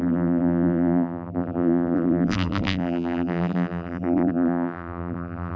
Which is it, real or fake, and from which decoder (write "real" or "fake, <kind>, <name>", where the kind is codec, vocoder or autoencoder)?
fake, vocoder, BigVGAN v2